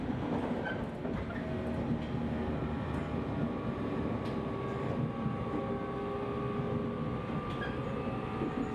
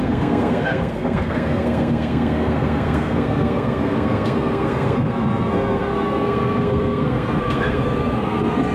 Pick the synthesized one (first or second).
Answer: second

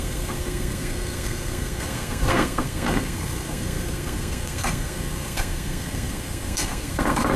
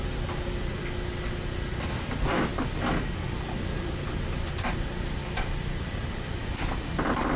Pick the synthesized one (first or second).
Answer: first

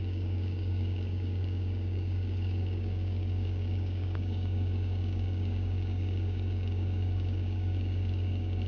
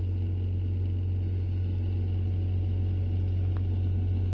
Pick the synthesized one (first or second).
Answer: first